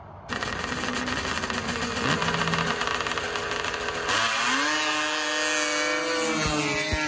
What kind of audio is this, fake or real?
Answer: real